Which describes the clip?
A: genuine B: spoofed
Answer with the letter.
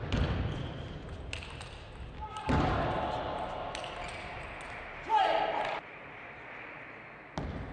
A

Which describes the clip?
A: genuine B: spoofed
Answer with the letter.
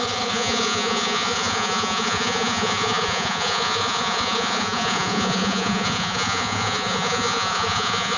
B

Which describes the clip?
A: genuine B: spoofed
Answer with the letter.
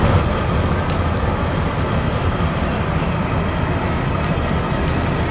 A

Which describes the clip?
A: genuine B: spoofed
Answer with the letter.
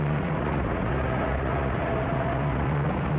B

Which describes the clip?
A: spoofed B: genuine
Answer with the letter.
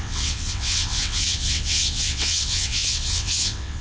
A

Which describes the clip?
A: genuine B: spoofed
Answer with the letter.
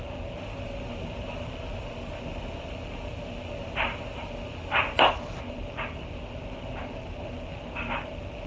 A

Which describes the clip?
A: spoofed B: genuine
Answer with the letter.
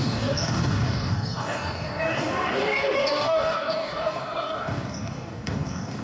A